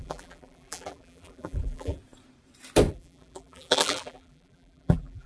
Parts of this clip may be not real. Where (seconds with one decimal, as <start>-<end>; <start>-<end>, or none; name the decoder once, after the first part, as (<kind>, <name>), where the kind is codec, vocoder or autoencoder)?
0.0-2.0 (vocoder, BigVGAN v2); 2.9-5.3